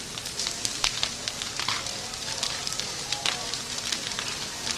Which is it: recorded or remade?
recorded